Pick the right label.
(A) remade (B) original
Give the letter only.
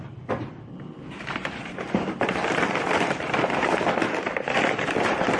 A